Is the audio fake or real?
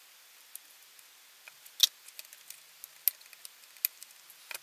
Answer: real